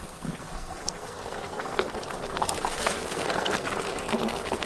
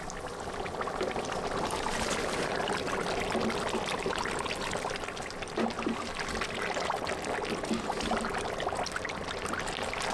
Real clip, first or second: second